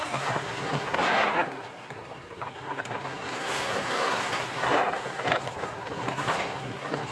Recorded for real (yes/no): no